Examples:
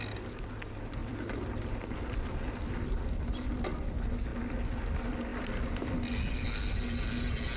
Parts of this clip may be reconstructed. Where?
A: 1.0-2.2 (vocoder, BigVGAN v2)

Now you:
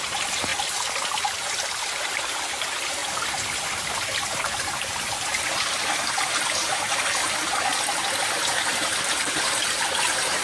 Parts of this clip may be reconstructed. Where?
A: 0.0-0.5 (vocoder, BigVGAN v2); 1.8-7.7; 8.5-10.4

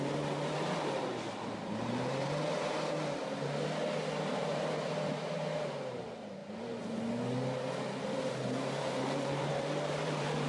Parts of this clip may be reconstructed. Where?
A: 0.0-3.2 (vocoder, BigVGAN v2); 4.3-6.4; 8.3-10.5

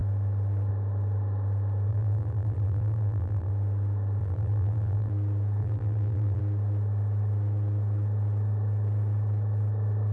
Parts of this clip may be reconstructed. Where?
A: 1.9-3.5 (vocoder, BigVGAN v2); 4.2-5.1; 5.6-6.4

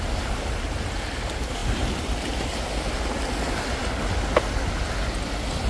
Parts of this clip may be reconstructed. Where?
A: none

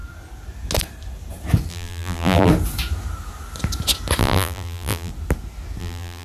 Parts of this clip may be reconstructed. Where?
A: 1.7-2.5 (vocoder, BigVGAN v2); 4.2-5.1; 5.8-6.2